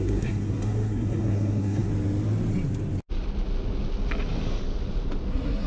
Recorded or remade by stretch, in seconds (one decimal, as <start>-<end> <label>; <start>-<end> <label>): 0.0-1.9 remade; 1.9-5.3 recorded; 5.3-5.7 remade

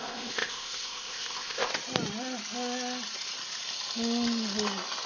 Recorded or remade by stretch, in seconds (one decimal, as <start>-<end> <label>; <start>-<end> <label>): 0.0-1.7 remade; 1.7-5.1 recorded

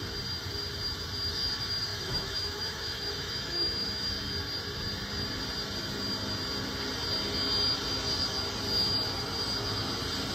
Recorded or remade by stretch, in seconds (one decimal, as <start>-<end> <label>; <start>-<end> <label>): 0.0-1.9 recorded; 1.9-4.1 remade; 4.1-10.3 recorded

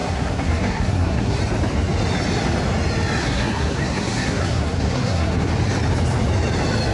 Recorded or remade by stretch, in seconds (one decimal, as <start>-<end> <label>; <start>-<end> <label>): 0.0-1.4 remade; 1.4-3.2 recorded; 3.2-5.5 remade; 5.5-6.9 recorded

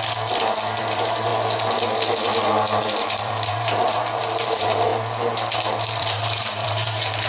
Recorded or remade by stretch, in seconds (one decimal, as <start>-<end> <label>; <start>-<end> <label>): 0.0-0.8 recorded; 0.8-1.3 remade; 1.3-2.8 recorded; 2.8-4.9 remade; 4.9-6.0 recorded; 6.0-7.3 remade

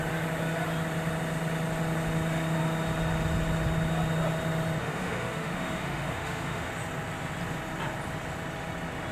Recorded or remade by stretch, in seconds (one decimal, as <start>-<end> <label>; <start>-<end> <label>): 0.0-4.8 recorded; 4.8-6.7 remade; 6.7-9.1 recorded